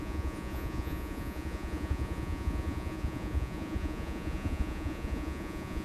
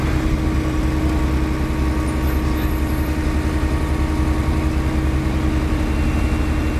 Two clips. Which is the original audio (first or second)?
second